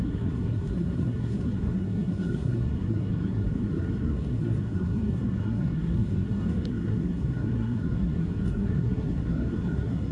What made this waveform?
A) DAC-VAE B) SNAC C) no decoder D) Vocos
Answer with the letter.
B